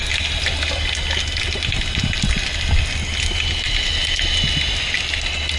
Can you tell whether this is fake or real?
real